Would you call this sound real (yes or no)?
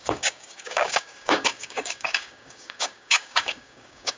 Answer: no